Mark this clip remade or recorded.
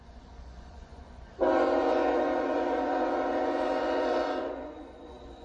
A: remade